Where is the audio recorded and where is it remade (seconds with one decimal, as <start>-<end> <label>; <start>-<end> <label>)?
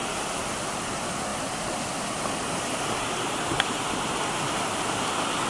0.0-0.8 remade; 0.8-1.3 recorded; 1.3-4.1 remade; 4.1-5.5 recorded